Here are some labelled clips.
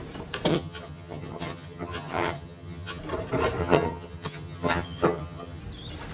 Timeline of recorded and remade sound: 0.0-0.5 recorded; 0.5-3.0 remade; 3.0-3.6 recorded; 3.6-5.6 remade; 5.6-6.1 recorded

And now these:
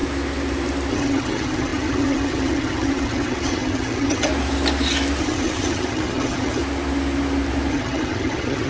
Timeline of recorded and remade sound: 0.0-0.9 recorded; 0.9-4.3 remade; 4.3-5.2 recorded; 5.2-6.6 remade; 6.6-7.7 recorded; 7.7-8.7 remade

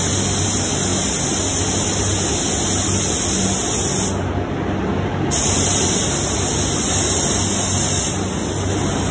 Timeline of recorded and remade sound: 0.0-9.1 recorded

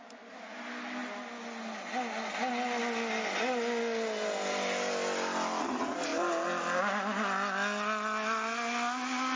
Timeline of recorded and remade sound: 0.0-9.4 recorded

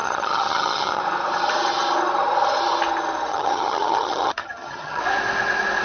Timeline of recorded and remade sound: 0.0-1.0 remade; 1.0-3.3 recorded; 3.3-5.0 remade; 5.0-5.8 recorded

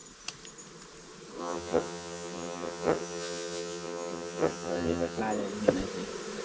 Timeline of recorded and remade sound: 0.0-1.4 recorded; 1.4-5.2 remade; 5.2-6.4 recorded